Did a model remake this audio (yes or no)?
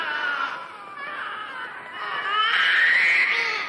no